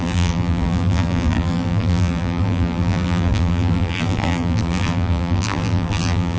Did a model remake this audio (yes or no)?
yes